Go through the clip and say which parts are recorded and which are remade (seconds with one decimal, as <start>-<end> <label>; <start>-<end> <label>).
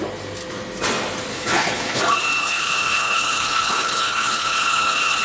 0.0-1.3 recorded; 1.3-2.0 remade; 2.0-2.4 recorded; 2.4-5.2 remade